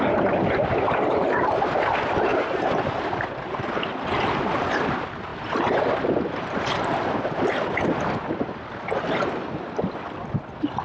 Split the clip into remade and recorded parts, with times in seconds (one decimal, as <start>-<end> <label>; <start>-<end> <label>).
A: 0.0-2.3 recorded; 2.3-3.8 remade; 3.8-10.8 recorded